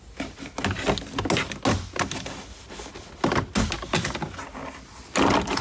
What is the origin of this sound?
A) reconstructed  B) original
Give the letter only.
B